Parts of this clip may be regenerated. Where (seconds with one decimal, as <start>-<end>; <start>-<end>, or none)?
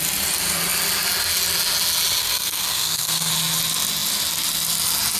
2.2-3.3